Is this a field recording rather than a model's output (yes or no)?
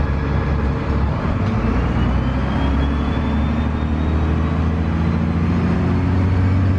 yes